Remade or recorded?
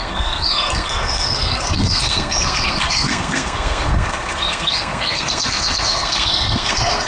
remade